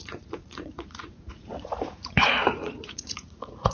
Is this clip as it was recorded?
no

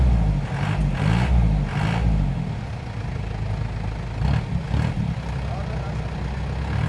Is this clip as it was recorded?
yes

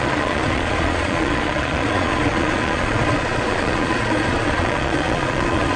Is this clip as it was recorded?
no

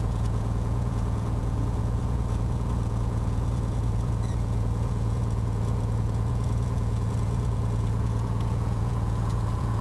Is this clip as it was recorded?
no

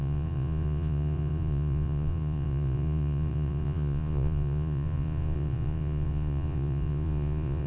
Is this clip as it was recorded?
no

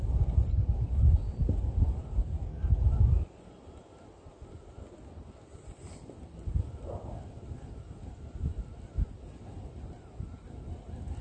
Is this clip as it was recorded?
yes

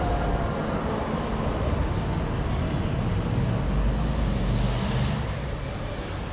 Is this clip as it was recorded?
yes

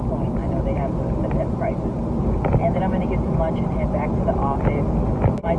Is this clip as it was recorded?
yes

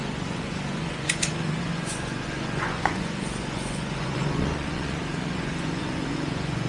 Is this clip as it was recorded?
no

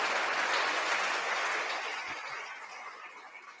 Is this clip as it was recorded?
no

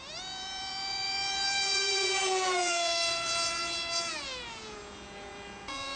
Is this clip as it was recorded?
no